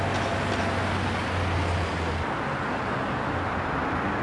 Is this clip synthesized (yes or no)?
no